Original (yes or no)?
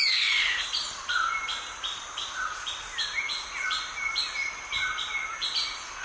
yes